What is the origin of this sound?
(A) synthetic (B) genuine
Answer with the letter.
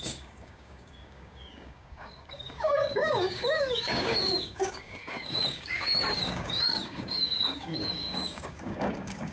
A